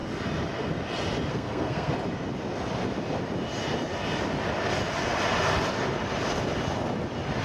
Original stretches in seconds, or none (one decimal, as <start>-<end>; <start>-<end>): 0.0-1.3; 1.9-7.4